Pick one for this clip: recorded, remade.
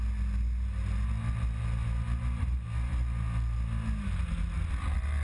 recorded